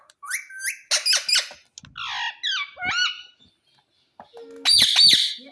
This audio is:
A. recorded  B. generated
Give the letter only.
A